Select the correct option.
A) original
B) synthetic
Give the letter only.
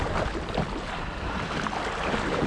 A